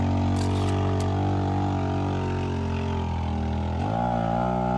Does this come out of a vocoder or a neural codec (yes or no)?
no